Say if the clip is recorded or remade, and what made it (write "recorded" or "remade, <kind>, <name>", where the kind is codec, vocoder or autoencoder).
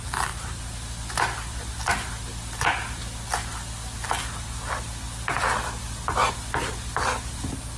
recorded